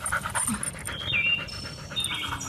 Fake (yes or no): no